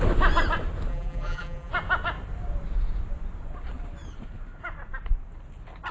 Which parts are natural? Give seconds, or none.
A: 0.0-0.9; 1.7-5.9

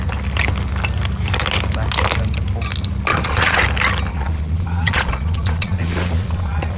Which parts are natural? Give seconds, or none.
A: 0.0-3.1; 3.6-4.1

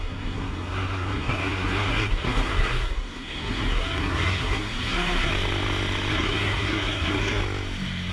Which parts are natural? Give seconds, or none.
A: 5.3-6.1; 7.4-8.1